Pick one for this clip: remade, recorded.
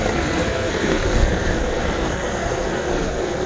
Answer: remade